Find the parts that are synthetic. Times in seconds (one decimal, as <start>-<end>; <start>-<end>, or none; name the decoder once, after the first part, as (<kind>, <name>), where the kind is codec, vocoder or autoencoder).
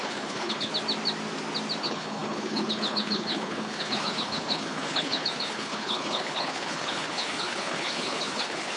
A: 0.0-0.7 (codec, HILCodec); 1.8-8.8